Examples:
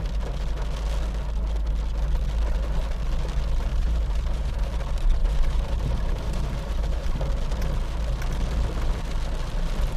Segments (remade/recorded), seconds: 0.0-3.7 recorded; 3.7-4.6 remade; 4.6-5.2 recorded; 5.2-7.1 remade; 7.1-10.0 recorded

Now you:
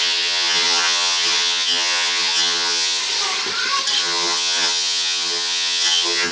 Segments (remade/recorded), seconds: 0.0-3.0 remade; 3.0-4.0 recorded; 4.0-6.3 remade

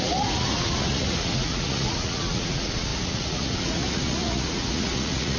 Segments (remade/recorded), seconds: 0.0-5.4 remade

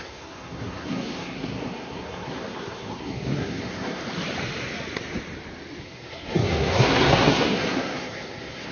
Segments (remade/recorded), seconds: 0.0-4.0 remade; 4.0-5.8 recorded; 5.8-8.7 remade

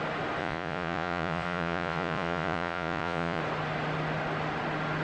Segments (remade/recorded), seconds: 0.0-0.4 recorded; 0.4-3.4 remade; 3.4-5.0 recorded

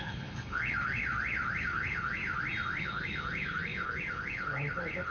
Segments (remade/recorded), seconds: 0.0-1.0 remade; 1.0-1.6 recorded; 1.6-2.2 remade; 2.2-2.8 recorded; 2.8-5.1 remade

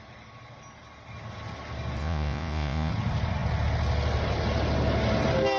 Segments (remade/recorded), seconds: 0.0-2.0 recorded; 2.0-2.9 remade; 2.9-5.6 recorded